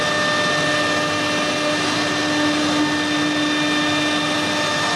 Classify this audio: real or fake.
real